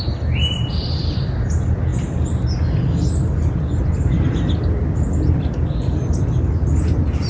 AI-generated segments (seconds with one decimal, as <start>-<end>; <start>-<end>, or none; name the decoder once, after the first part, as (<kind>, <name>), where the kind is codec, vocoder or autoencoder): none